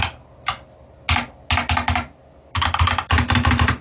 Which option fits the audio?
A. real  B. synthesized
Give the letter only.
A